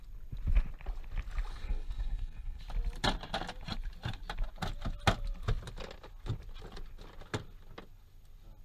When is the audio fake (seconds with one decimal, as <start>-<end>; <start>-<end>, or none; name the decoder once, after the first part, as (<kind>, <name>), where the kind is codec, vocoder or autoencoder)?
1.5-2.6 (codec, SNAC)